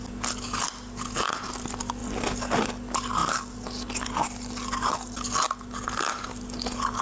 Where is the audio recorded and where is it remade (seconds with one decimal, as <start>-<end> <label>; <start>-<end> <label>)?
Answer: 0.0-7.0 recorded